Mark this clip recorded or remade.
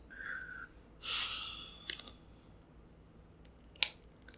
recorded